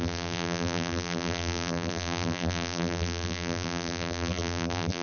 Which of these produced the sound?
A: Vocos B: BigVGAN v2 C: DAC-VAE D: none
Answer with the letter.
B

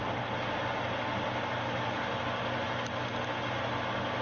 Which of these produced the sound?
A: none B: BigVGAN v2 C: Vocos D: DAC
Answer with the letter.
A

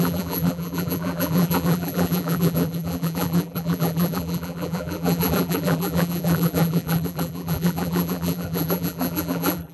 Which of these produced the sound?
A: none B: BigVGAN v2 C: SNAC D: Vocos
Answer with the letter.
B